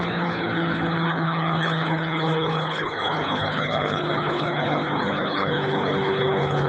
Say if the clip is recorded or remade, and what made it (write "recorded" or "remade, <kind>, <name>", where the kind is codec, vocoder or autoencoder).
remade, codec, HILCodec